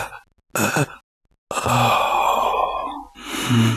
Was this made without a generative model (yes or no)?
yes